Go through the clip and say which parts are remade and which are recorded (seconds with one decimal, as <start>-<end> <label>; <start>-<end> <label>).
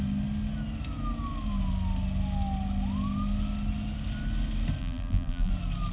0.0-4.8 recorded; 4.8-5.5 remade; 5.5-5.9 recorded